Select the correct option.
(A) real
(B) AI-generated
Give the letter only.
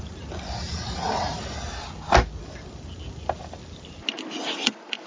A